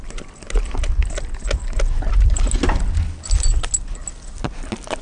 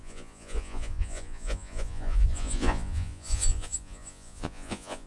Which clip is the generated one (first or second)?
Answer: second